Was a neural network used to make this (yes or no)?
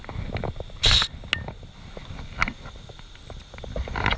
no